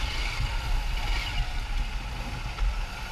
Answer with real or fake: real